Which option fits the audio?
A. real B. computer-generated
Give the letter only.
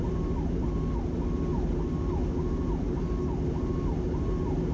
A